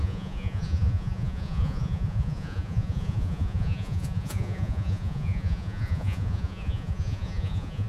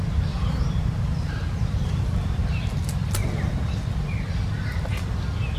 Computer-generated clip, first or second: first